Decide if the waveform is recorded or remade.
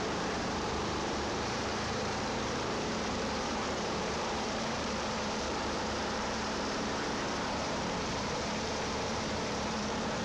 remade